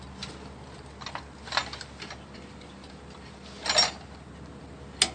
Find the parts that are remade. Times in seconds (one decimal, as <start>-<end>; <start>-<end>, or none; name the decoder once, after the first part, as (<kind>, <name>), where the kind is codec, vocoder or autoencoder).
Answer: none

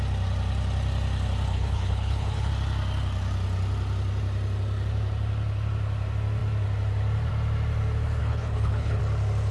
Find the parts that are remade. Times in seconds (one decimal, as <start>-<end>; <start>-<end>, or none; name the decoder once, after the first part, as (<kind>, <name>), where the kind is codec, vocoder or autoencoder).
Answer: 1.5-2.5 (codec, HILCodec); 8.2-9.0

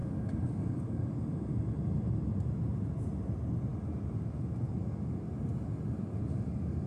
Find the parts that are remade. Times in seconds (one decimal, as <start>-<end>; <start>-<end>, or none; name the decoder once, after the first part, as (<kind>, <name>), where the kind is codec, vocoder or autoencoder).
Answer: 0.0-1.2 (codec, DAC); 6.2-6.9

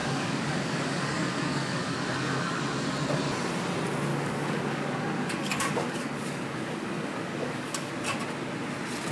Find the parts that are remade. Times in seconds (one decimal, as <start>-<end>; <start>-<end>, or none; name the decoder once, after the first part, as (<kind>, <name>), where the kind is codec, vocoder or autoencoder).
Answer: 0.0-2.6 (codec, DAC); 4.1-7.9

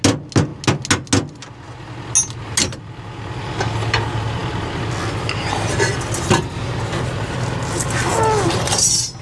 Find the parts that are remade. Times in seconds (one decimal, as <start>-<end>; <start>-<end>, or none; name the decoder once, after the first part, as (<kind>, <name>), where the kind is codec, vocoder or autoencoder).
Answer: none